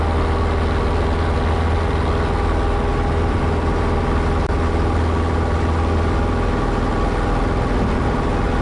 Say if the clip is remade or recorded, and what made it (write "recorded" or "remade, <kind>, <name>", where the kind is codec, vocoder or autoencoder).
recorded